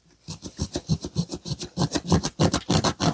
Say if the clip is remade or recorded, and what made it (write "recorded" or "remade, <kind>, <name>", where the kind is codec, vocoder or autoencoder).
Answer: remade, vocoder, BigVGAN v2